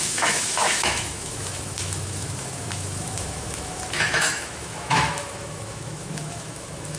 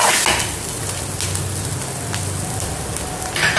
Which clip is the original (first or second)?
second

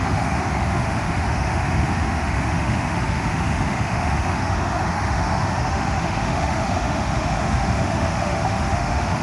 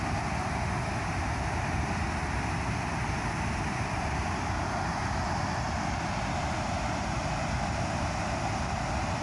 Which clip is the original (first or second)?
second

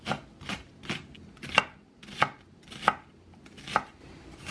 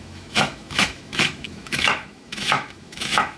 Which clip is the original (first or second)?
first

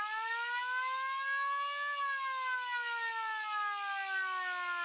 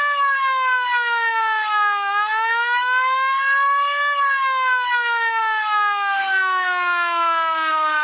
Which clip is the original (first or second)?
first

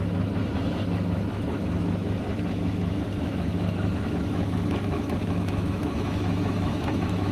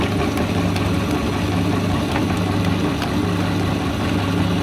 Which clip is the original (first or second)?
second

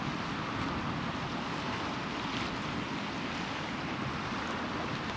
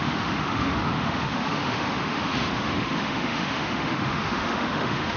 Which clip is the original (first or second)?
first